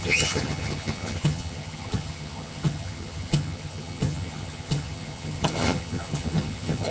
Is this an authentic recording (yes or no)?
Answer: no